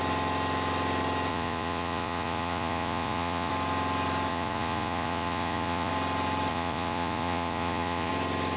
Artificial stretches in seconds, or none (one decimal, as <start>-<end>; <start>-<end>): 1.3-3.5; 4.3-5.9; 6.5-8.1